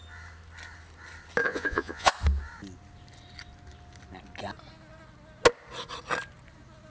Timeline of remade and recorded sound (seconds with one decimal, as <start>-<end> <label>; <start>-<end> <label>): 0.0-1.4 recorded; 1.4-2.1 remade; 2.1-6.9 recorded